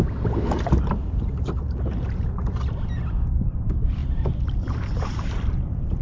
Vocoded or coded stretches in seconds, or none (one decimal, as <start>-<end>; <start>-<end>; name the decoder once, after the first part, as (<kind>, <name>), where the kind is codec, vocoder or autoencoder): 1.0-2.2 (vocoder, BigVGAN v2); 4.0-5.5